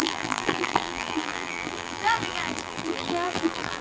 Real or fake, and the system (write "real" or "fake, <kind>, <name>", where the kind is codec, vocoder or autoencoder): fake, vocoder, BigVGAN v2